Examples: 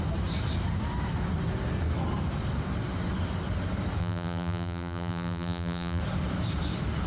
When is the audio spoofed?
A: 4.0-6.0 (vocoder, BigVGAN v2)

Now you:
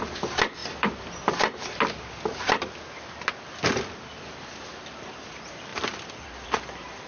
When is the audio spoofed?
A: 0.6-1.4 (vocoder, BigVGAN v2); 5.7-6.6

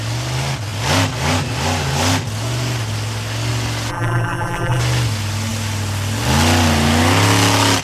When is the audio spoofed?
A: 3.9-4.8 (vocoder, BigVGAN v2)

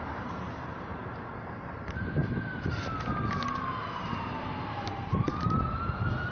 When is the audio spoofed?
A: 0.0-2.2 (vocoder, BigVGAN v2); 4.0-6.3

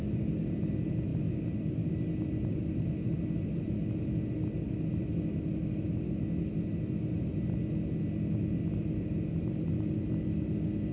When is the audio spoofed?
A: none

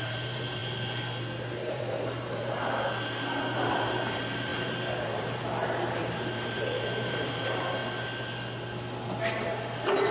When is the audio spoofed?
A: 0.0-0.6 (vocoder, BigVGAN v2); 1.6-7.8

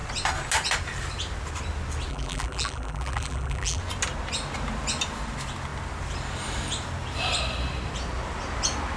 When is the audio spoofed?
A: 2.1-3.8 (vocoder, BigVGAN v2)

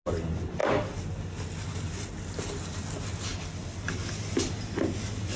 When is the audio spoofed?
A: none